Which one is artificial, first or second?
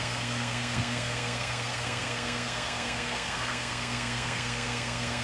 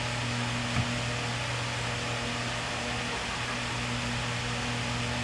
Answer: first